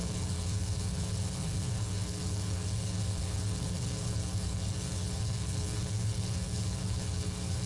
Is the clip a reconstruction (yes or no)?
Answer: yes